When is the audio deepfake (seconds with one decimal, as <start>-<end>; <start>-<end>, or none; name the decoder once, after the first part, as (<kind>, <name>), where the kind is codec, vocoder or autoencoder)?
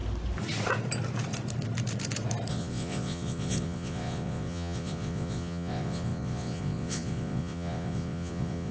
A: 2.5-8.7 (vocoder, Vocos)